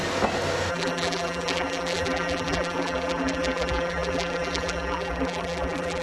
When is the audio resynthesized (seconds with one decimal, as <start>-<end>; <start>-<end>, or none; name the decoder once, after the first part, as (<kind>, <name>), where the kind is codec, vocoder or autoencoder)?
0.7-6.0 (vocoder, BigVGAN v2)